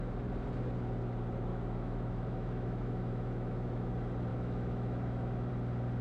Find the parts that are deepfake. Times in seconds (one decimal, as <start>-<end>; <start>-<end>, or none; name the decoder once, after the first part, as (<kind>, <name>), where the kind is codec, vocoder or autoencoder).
1.5-3.9 (autoencoder, DAC-VAE); 4.3-5.5